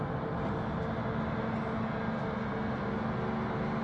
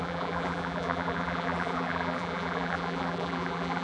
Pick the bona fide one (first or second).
first